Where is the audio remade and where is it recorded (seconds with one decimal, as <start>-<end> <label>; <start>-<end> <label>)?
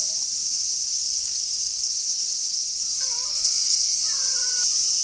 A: 0.0-0.9 recorded; 0.9-1.9 remade; 1.9-3.3 recorded; 3.3-4.0 remade; 4.0-5.0 recorded